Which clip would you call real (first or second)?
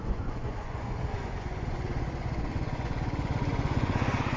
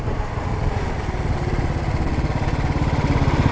second